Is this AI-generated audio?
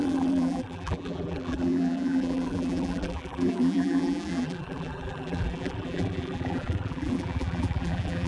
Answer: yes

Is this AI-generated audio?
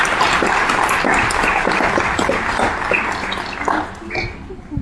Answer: no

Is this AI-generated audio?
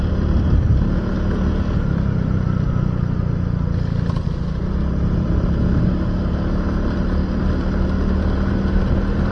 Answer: no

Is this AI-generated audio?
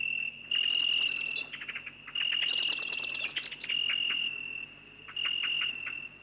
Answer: no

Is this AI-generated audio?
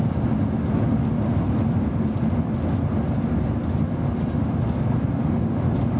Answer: no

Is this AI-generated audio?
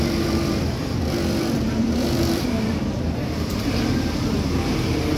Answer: yes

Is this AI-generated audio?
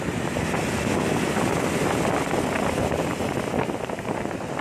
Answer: no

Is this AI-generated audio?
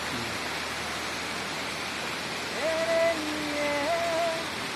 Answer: yes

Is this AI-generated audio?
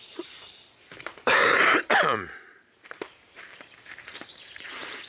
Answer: yes